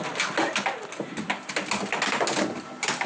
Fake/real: real